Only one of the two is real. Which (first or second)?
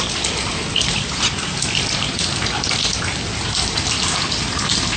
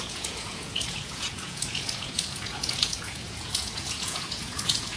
first